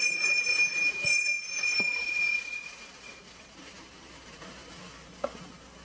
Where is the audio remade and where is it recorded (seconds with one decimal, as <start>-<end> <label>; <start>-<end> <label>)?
0.0-1.7 recorded; 1.7-4.7 remade; 4.7-5.8 recorded